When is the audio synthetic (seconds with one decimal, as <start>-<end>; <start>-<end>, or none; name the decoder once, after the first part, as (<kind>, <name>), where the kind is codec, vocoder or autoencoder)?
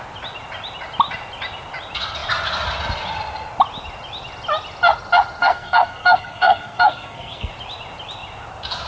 5.4-7.5 (codec, SNAC)